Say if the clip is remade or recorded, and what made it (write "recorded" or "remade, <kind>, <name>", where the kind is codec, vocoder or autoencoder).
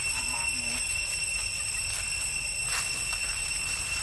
recorded